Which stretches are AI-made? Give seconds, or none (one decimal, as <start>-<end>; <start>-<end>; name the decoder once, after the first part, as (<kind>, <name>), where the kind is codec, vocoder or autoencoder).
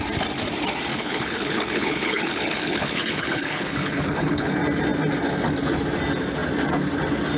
0.9-4.5 (codec, HILCodec)